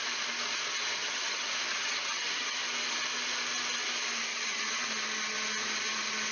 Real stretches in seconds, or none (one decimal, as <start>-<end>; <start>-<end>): 0.0-1.0; 2.6-4.3; 4.9-6.3